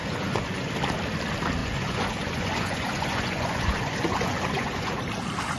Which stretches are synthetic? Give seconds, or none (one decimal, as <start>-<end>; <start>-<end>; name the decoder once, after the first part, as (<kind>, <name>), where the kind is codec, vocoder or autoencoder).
0.0-0.7 (vocoder, Vocos); 1.6-5.0